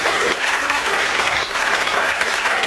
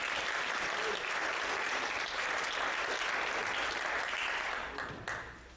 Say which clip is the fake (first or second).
first